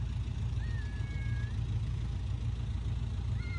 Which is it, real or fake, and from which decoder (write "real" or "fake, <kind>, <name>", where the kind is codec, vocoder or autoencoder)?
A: real